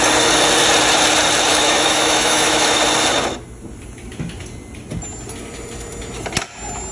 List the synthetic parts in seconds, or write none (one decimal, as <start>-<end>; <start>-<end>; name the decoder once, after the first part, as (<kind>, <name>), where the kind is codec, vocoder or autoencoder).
1.5-2.8 (autoencoder, DAC-VAE)